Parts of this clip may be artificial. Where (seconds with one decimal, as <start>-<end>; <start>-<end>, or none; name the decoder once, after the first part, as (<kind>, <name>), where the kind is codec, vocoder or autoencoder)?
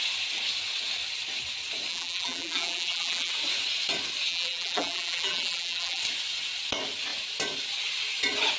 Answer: 1.9-3.3 (vocoder, BigVGAN v2); 4.3-6.0